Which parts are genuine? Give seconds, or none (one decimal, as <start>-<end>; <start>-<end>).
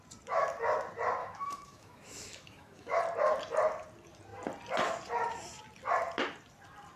0.0-1.2; 3.0-7.0